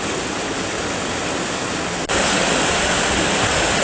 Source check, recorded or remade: recorded